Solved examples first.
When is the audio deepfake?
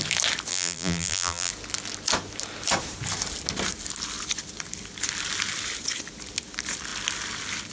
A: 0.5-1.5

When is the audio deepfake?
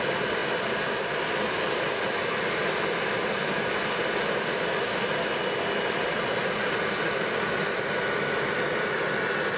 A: none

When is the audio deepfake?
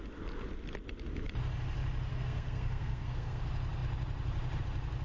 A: 2.1-3.4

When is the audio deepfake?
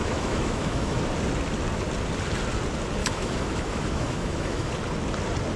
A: 0.0-1.0; 3.0-4.7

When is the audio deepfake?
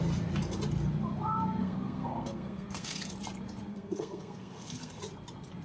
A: 1.6-3.1; 3.7-5.0